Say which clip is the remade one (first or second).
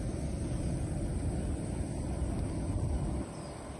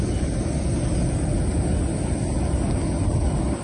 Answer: first